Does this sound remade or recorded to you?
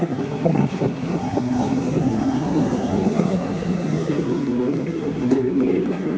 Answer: remade